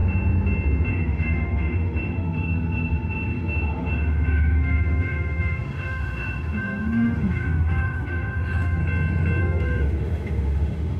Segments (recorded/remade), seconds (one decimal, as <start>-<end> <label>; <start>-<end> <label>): 0.0-0.9 recorded; 0.9-8.8 remade; 8.8-9.4 recorded; 9.4-11.0 remade